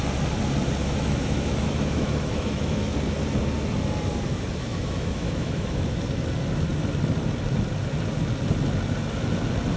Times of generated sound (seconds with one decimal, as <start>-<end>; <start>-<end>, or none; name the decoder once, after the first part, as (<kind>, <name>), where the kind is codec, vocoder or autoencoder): 0.8-2.9 (autoencoder, DAC-VAE); 4.7-6.0